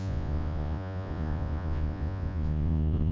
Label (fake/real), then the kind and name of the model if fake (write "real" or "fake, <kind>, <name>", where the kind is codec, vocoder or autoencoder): fake, vocoder, Vocos